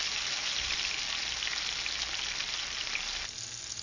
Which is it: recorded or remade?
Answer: recorded